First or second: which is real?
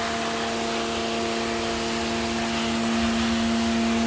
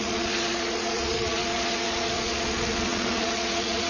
first